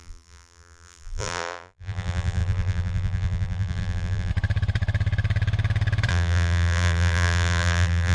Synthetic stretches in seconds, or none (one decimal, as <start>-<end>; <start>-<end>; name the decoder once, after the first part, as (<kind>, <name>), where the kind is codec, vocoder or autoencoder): 0.0-4.3 (vocoder, BigVGAN v2); 6.1-8.1